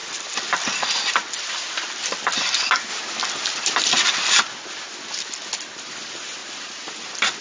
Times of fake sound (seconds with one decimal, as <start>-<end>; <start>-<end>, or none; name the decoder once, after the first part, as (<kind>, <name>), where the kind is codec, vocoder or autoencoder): 2.9-4.4 (vocoder, BigVGAN v2); 6.4-7.4